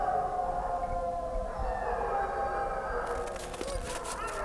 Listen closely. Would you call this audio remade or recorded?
recorded